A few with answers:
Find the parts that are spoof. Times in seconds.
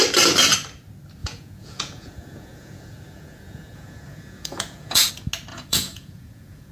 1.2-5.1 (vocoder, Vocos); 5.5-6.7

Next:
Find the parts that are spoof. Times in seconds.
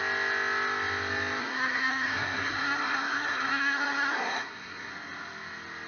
1.4-4.9 (codec, SNAC)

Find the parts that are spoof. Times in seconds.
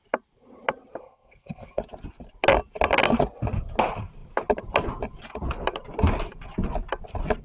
1.0-1.8 (codec, SNAC)